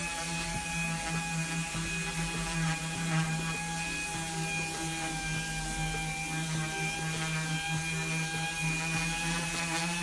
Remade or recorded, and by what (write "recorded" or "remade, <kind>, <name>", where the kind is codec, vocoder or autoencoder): recorded